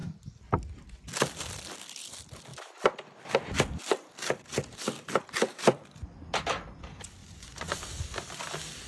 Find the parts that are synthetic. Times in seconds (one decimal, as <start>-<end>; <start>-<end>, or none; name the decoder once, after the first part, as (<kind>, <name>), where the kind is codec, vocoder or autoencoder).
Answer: 7.2-7.8 (vocoder, Vocos)